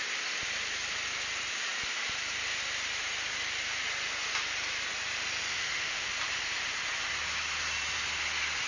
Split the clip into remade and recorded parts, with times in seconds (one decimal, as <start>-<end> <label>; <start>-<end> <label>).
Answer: 0.0-5.5 recorded; 5.5-6.1 remade; 6.1-8.7 recorded